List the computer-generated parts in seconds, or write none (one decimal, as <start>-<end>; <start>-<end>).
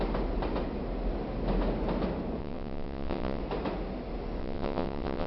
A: 2.4-3.4; 4.4-5.3